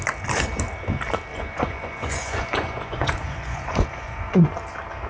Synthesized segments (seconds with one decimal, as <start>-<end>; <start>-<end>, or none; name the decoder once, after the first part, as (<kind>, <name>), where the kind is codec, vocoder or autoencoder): 1.3-4.4 (vocoder, Vocos)